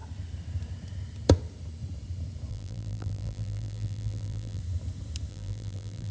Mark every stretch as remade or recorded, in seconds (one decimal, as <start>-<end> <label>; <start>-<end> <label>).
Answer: 0.0-2.5 recorded; 2.5-4.6 remade; 4.6-5.3 recorded; 5.3-6.1 remade